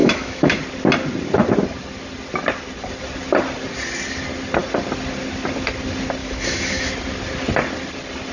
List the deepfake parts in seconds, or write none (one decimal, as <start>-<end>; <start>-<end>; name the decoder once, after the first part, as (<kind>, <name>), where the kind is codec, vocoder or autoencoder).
0.0-0.6 (autoencoder, DAC-VAE); 6.2-6.9